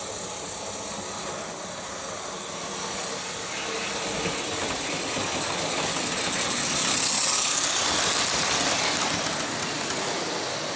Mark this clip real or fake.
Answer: real